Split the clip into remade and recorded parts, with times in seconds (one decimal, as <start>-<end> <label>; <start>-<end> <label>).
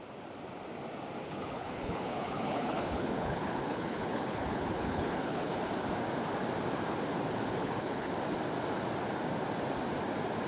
0.0-1.2 recorded; 1.2-5.6 remade; 5.6-7.6 recorded; 7.6-8.1 remade; 8.1-10.5 recorded